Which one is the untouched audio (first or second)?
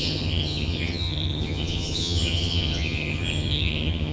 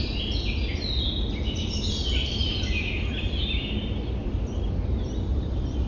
second